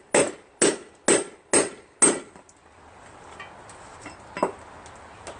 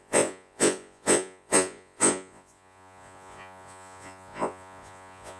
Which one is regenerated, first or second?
second